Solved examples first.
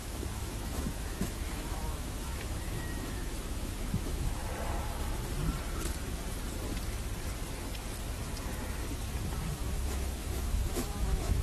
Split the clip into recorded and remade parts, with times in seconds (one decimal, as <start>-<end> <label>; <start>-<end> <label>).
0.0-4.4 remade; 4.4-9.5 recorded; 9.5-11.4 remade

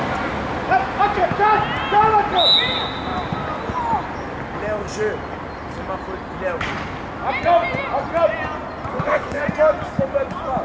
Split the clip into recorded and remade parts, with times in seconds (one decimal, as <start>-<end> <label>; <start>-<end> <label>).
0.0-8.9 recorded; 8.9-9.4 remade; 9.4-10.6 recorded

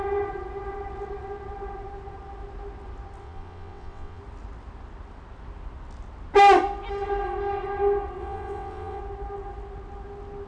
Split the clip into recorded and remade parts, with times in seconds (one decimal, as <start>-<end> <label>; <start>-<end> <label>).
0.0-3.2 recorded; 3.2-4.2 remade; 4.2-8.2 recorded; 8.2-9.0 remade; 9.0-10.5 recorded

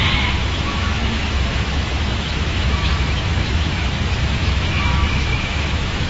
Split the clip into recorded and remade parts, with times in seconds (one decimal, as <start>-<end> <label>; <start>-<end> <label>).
0.0-6.1 remade

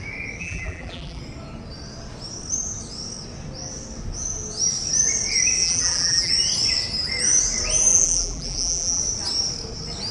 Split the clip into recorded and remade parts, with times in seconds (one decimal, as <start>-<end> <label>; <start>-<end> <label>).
0.0-0.4 recorded; 0.4-1.2 remade; 1.2-5.6 recorded; 5.6-6.3 remade; 6.3-7.9 recorded; 7.9-9.0 remade; 9.0-10.1 recorded

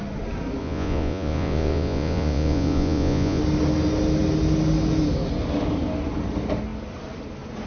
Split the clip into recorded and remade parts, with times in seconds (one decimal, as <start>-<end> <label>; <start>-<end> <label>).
0.0-0.6 recorded; 0.6-3.4 remade; 3.4-7.7 recorded